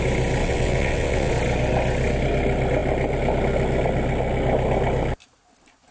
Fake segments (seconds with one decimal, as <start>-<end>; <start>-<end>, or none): 0.4-1.3